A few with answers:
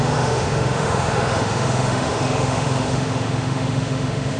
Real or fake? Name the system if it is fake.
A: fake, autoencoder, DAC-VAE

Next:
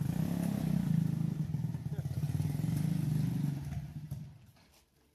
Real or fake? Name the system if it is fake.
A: real